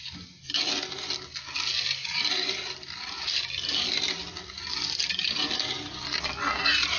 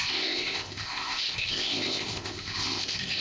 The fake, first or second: second